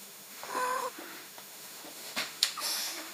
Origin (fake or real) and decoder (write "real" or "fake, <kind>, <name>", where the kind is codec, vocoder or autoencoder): fake, autoencoder, DAC-VAE